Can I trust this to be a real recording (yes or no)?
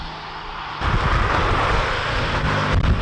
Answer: yes